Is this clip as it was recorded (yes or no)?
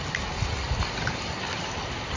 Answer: yes